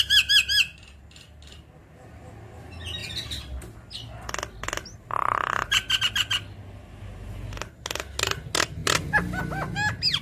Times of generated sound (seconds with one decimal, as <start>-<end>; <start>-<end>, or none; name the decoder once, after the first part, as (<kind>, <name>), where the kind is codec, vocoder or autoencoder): none